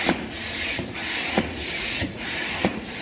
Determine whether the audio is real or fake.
fake